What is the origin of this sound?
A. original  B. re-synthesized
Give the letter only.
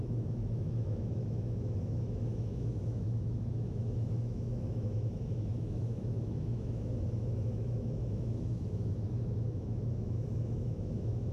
B